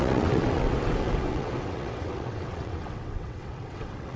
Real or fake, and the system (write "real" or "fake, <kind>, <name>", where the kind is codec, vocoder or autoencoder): fake, vocoder, WaveNeXt